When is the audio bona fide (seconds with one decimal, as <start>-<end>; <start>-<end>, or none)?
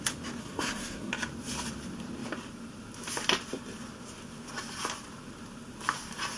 0.0-0.4; 1.1-6.4